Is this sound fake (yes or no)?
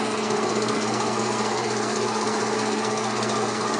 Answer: yes